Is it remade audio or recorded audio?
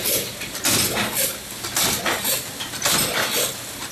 recorded